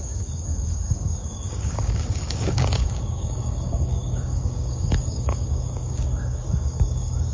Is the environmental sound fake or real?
fake